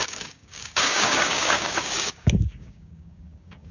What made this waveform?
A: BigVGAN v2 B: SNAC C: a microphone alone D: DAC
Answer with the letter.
D